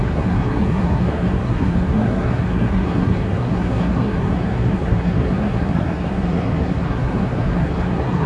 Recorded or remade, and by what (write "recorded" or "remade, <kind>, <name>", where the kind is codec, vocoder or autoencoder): remade, codec, SNAC